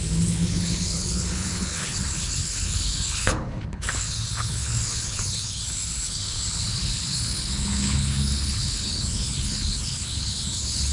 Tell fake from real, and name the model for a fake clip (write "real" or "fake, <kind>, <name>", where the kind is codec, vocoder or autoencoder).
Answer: fake, codec, HILCodec